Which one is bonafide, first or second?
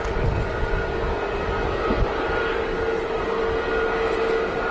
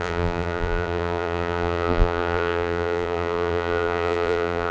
first